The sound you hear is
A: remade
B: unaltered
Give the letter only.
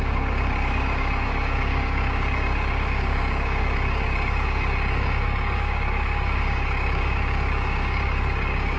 A